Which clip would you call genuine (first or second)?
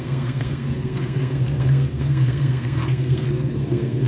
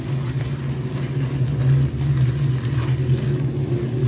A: second